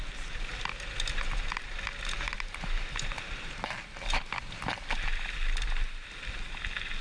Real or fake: real